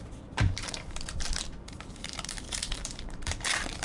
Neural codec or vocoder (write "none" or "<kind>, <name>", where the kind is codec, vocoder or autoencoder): vocoder, BigVGAN v2